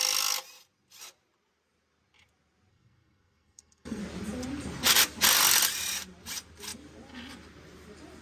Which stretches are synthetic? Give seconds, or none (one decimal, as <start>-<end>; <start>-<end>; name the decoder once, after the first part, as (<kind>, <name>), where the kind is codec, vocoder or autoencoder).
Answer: 2.7-4.0 (codec, SNAC)